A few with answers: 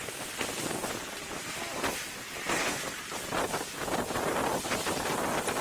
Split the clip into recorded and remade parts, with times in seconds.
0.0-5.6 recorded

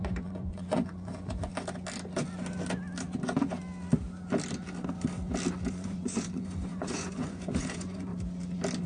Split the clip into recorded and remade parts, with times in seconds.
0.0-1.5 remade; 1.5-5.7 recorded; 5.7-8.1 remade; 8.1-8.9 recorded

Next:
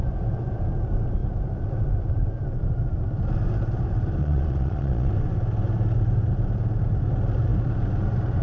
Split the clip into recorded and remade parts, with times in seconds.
0.0-4.2 recorded; 4.2-5.1 remade; 5.1-8.4 recorded

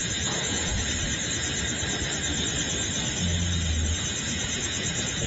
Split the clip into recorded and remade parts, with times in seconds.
0.0-0.7 remade; 0.7-3.9 recorded; 3.9-5.3 remade

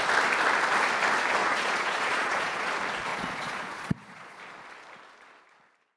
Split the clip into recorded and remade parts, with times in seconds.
0.0-1.4 recorded; 1.4-2.7 remade; 2.7-3.1 recorded; 3.1-4.4 remade; 4.4-6.0 recorded